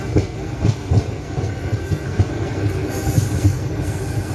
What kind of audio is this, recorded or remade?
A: remade